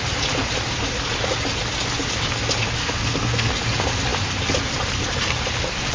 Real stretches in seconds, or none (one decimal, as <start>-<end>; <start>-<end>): 0.0-2.8; 3.5-5.9